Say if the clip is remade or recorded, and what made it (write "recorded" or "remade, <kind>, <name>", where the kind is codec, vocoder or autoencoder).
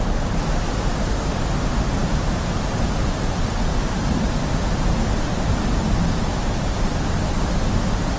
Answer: recorded